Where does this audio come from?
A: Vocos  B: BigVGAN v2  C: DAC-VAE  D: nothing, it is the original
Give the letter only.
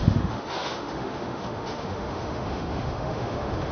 C